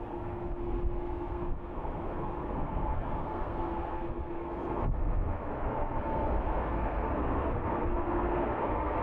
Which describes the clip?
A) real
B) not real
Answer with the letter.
B